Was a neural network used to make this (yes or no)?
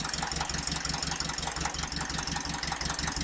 no